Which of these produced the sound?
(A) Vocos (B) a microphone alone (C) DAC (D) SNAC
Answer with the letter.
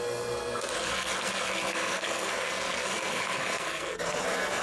D